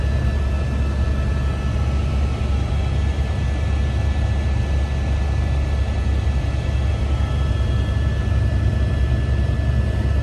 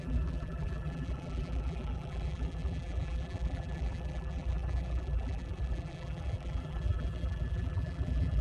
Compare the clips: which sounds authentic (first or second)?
first